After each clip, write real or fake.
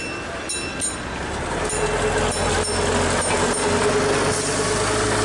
real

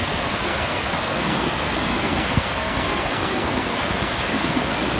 fake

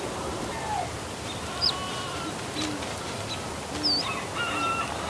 real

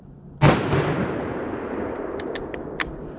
real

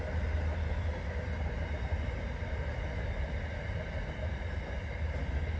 real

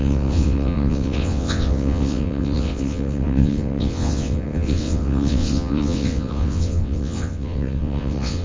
fake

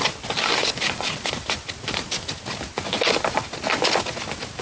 real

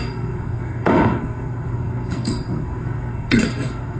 fake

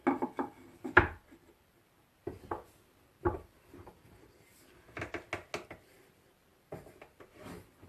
real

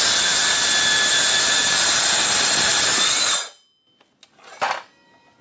real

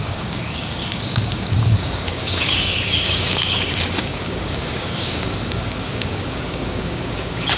fake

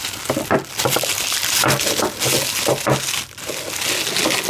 real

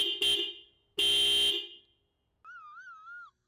real